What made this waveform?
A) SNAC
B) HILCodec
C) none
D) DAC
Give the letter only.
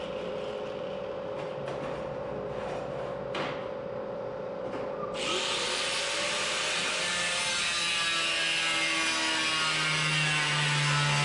C